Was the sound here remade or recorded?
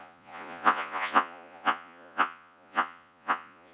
remade